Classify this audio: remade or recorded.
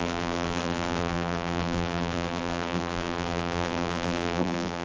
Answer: remade